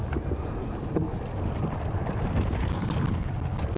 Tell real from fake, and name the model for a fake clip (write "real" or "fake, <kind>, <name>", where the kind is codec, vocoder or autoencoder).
real